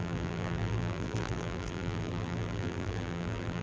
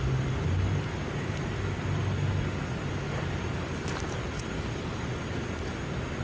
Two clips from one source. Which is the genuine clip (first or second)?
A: second